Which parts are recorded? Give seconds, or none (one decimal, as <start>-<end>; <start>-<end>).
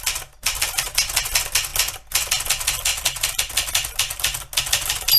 0.0-5.2